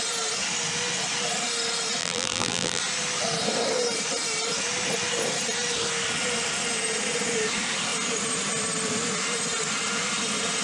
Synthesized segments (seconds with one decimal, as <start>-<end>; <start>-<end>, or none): 2.0-2.8